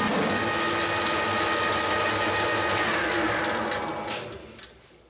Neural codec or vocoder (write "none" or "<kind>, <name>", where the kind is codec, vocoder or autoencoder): none